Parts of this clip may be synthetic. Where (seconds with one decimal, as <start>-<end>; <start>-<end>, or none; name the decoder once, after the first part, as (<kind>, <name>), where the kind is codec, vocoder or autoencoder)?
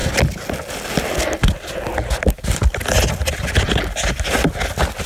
none